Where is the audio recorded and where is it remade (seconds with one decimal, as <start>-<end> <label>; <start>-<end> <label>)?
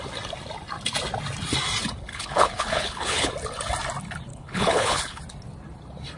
0.0-2.1 recorded; 2.1-3.3 remade; 3.3-4.3 recorded; 4.3-5.2 remade; 5.2-6.2 recorded